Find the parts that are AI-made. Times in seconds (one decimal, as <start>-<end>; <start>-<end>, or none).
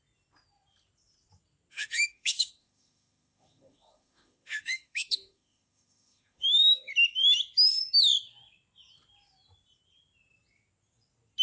1.7-6.9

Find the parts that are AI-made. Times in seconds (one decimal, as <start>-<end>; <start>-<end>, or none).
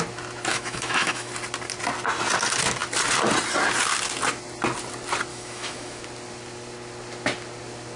0.5-1.3; 5.3-6.0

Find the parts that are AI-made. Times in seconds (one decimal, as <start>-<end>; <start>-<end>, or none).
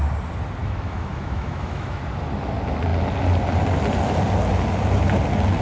0.6-2.0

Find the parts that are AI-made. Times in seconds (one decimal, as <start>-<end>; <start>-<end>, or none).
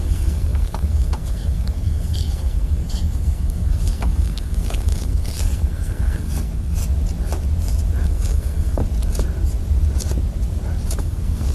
0.0-6.8; 8.0-8.8; 11.0-11.5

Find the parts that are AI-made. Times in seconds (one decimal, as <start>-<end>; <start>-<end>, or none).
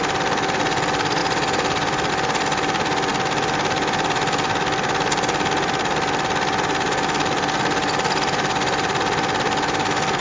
1.2-2.1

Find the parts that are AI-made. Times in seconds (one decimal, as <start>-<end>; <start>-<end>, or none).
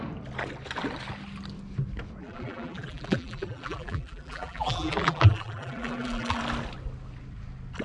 2.2-6.4